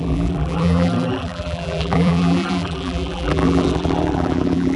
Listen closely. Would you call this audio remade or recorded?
remade